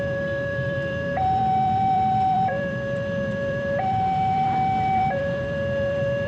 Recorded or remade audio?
remade